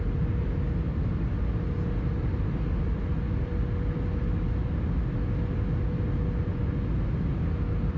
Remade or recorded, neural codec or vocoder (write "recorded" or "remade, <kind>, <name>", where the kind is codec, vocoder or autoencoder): recorded